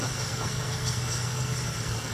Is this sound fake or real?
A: fake